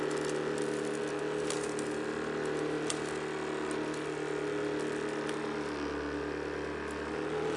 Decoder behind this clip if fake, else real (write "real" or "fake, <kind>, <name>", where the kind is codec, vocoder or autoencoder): real